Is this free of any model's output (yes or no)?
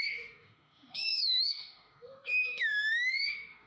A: no